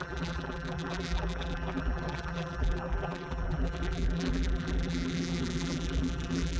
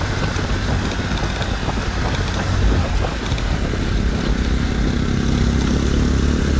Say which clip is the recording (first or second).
second